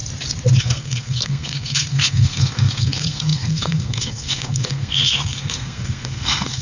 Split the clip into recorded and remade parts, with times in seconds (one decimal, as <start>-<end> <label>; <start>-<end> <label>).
0.0-0.6 recorded; 0.6-6.6 remade